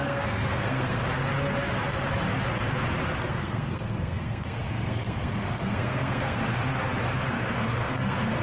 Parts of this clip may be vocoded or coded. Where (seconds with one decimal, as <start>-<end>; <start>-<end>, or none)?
0.0-1.0; 3.3-6.4; 7.3-8.4